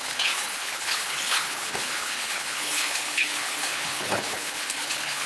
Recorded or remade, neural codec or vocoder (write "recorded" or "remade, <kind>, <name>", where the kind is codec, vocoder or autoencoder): remade, codec, HILCodec